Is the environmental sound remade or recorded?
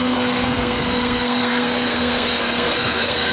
remade